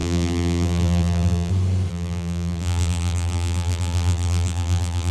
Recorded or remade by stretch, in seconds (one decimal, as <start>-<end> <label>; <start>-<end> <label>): 0.0-1.5 remade; 1.5-1.9 recorded; 1.9-5.1 remade